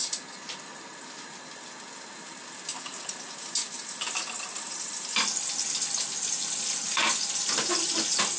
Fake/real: real